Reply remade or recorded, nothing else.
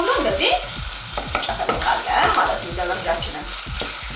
remade